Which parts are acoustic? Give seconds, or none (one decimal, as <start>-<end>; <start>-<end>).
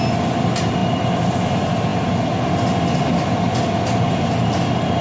0.0-5.0